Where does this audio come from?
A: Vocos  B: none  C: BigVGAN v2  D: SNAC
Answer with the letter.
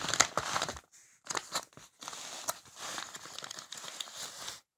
B